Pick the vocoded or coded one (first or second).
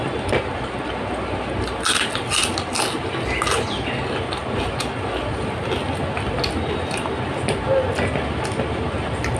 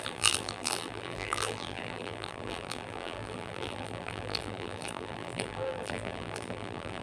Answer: second